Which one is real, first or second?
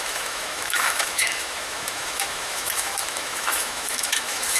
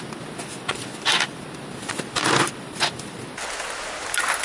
second